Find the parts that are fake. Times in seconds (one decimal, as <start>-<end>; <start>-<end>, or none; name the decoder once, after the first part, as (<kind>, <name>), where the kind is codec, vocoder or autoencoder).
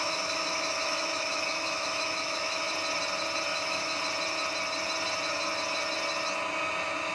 0.0-2.7 (autoencoder, DAC-VAE); 3.5-4.0